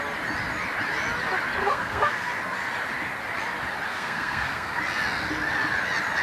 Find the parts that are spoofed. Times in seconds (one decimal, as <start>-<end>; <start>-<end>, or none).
1.6-2.3; 3.9-4.8